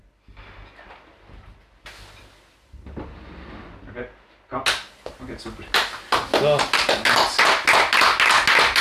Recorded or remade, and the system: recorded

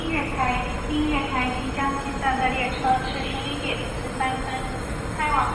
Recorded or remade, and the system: recorded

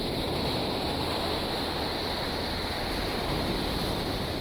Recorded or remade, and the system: recorded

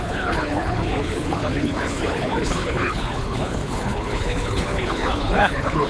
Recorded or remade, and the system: remade, codec, HILCodec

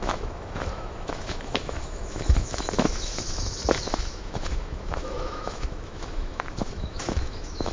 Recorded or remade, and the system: remade, autoencoder, DAC-VAE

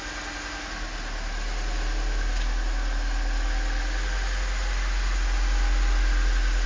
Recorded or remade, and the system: recorded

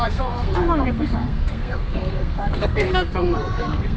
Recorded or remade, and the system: remade, codec, SNAC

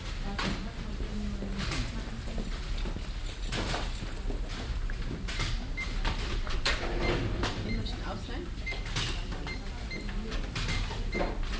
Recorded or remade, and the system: recorded